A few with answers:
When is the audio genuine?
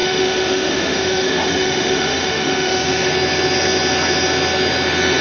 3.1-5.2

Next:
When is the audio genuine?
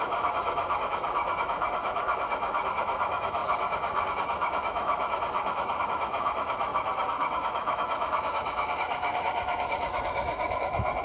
none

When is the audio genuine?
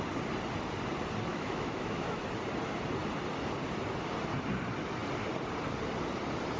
0.0-1.3; 2.2-6.6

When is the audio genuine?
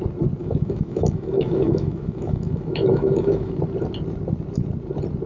0.0-0.4; 3.6-5.3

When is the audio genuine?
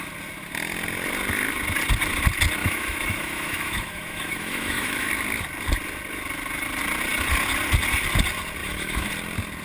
0.0-2.6; 5.1-8.6; 9.1-9.6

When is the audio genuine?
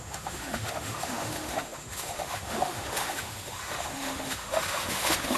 none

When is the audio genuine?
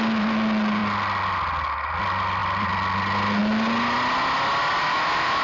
0.0-4.9